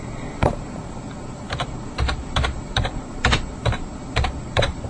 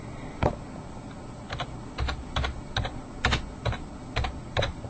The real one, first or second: second